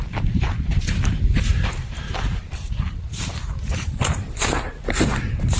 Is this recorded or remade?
remade